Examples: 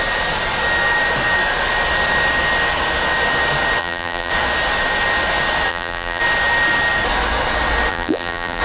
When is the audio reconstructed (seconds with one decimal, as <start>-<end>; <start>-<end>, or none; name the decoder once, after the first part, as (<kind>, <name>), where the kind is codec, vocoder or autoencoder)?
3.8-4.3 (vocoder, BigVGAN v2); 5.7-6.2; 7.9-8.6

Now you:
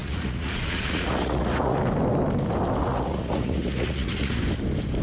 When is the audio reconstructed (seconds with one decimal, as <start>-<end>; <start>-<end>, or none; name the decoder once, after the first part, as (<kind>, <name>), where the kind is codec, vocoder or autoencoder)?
0.0-1.8 (vocoder, Vocos); 2.8-4.4

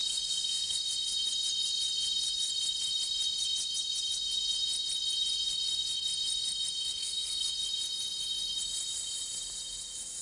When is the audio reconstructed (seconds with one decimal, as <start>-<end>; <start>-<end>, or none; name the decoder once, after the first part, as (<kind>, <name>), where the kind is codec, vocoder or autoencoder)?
0.0-0.8 (codec, SNAC); 6.9-7.5

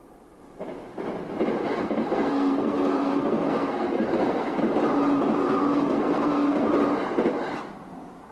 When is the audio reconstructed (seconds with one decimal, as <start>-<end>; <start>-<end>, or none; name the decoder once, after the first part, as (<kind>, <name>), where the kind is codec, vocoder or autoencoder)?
1.6-4.6 (codec, SNAC); 5.4-6.7

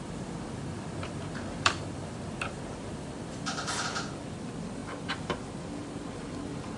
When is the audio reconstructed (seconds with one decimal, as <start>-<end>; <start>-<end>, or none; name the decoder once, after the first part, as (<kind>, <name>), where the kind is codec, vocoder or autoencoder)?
0.0-4.8 (vocoder, BigVGAN v2); 5.6-6.8